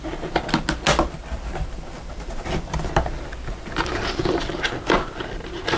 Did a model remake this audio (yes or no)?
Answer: no